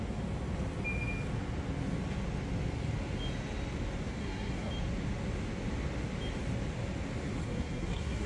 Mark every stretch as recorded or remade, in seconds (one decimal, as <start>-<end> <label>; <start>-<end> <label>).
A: 0.0-4.2 recorded; 4.2-4.7 remade; 4.7-7.4 recorded; 7.4-8.3 remade